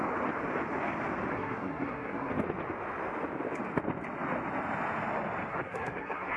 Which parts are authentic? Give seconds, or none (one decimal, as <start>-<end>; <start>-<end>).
0.0-1.3; 2.3-5.5